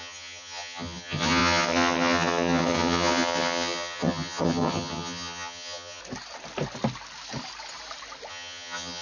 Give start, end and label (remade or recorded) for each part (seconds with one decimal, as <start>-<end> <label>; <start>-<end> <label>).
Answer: 0.0-6.0 remade; 6.0-8.3 recorded; 8.3-9.0 remade